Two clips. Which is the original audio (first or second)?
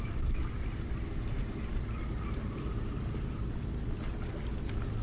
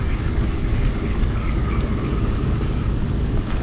first